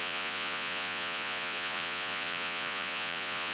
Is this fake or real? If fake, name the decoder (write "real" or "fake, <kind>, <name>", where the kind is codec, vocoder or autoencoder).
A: fake, vocoder, Vocos